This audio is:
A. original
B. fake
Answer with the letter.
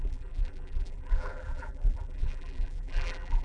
B